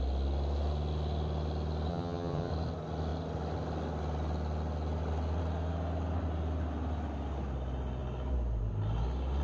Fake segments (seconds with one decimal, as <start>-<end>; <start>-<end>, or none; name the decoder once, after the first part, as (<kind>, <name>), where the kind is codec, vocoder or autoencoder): 1.9-2.5 (vocoder, HiFi-GAN)